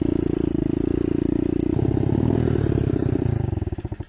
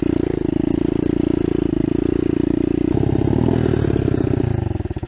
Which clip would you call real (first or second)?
second